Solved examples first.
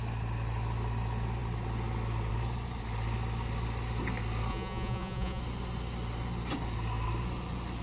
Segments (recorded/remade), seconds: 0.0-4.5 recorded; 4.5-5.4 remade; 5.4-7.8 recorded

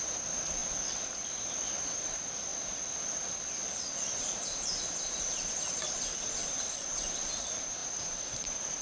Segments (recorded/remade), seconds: 0.0-0.6 remade; 0.6-1.9 recorded; 1.9-2.5 remade; 2.5-4.2 recorded; 4.2-8.8 remade

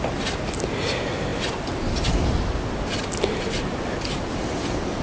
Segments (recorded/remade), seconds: 0.0-5.0 recorded

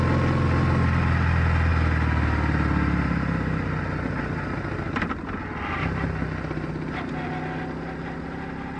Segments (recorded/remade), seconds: 0.0-8.8 recorded

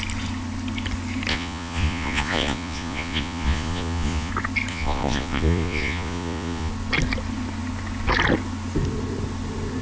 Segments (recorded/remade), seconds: 0.0-1.3 recorded; 1.3-4.3 remade; 4.3-4.7 recorded; 4.7-6.7 remade; 6.7-9.8 recorded

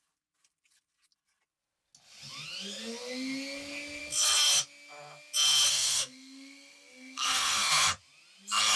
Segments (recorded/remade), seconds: 0.0-5.7 recorded; 5.7-7.7 remade; 7.7-8.8 recorded

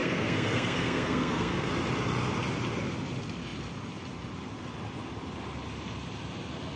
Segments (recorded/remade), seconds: 0.0-1.7 remade; 1.7-6.8 recorded